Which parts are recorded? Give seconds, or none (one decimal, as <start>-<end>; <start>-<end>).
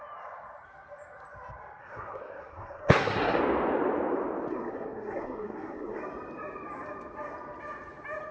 0.0-1.8; 3.4-4.5; 6.0-8.3